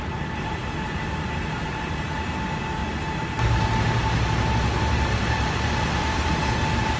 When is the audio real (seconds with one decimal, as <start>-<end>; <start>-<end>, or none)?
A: 0.0-7.0